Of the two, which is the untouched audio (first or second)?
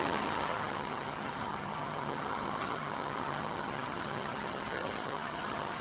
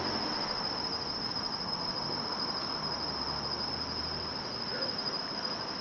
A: second